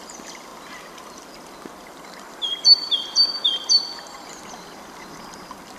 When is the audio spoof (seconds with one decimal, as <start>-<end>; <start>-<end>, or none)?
0.0-5.8

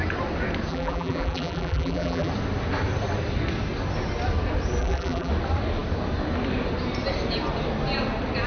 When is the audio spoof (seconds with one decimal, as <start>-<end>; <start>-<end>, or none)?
0.7-2.3; 4.8-5.3

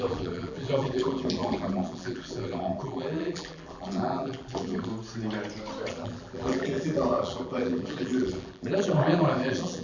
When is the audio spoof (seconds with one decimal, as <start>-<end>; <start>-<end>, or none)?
0.0-4.9; 5.9-9.8